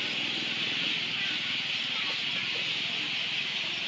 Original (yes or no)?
yes